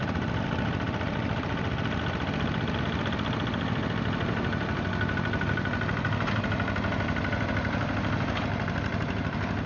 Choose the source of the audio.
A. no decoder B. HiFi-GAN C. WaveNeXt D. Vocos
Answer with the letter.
A